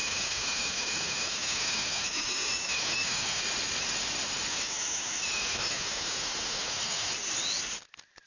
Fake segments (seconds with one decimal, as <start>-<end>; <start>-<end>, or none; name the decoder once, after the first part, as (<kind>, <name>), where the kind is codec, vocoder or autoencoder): 0.0-3.4 (autoencoder, DAC-VAE); 4.5-7.1